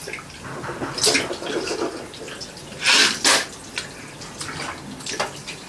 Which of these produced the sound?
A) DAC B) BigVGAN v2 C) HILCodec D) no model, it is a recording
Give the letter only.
D